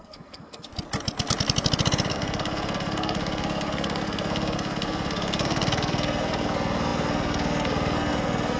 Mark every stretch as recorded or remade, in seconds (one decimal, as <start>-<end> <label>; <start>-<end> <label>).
0.0-0.7 remade; 0.7-2.1 recorded; 2.1-8.6 remade